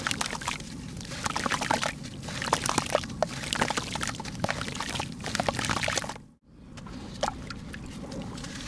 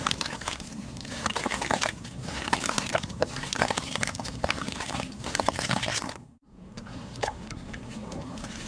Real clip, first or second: first